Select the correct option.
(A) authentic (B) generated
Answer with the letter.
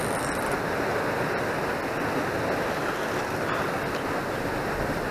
A